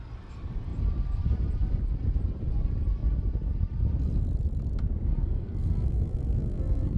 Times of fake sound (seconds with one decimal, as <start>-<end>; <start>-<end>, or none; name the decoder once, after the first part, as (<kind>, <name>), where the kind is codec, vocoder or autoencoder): 5.2-7.0 (codec, SNAC)